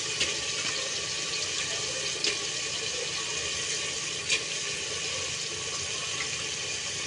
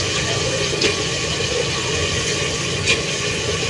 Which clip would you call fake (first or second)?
second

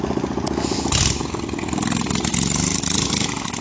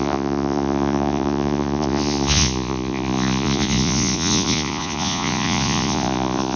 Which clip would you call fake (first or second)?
second